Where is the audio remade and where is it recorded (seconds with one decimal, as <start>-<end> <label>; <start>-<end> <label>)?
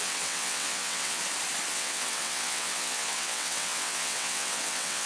0.0-1.2 remade; 1.2-1.7 recorded; 1.7-5.1 remade